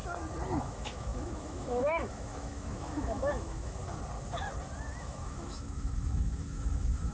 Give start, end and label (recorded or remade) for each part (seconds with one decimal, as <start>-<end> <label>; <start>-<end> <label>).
0.0-0.6 recorded; 0.6-3.8 remade; 3.8-5.0 recorded; 5.0-7.1 remade